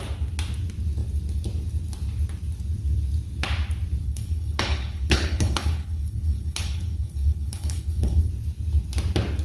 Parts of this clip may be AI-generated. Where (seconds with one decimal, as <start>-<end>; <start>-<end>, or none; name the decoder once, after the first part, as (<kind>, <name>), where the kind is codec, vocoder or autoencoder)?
4.0-8.3 (codec, HILCodec)